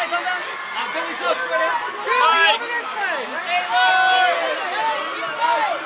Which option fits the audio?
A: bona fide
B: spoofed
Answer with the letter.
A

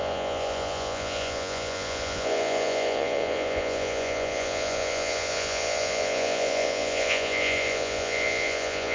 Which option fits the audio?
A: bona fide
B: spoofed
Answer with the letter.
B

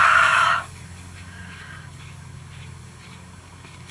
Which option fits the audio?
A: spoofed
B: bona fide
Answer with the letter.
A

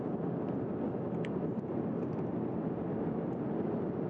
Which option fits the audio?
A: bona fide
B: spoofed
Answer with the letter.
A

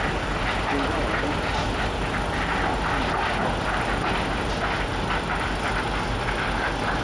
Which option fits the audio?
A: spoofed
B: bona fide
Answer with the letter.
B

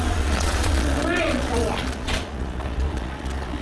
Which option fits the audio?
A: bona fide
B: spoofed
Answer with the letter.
B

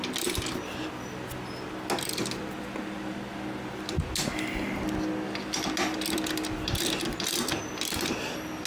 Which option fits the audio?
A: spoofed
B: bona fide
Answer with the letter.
B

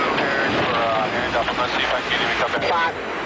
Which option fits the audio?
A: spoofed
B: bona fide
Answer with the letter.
B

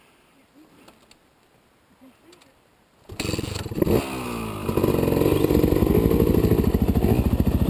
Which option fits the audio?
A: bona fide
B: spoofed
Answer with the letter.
A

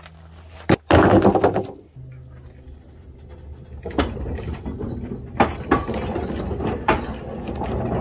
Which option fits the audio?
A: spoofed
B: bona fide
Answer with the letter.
B